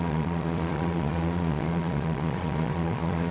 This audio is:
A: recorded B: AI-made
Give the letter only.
B